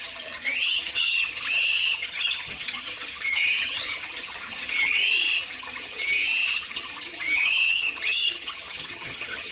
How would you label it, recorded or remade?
remade